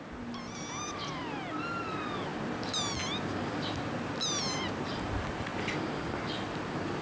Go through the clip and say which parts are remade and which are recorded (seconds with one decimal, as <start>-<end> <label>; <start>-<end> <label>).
0.0-7.0 recorded